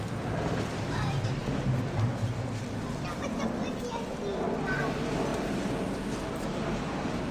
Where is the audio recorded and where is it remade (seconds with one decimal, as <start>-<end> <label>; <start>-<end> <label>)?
0.0-7.3 recorded